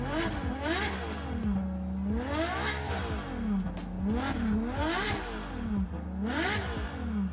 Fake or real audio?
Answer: real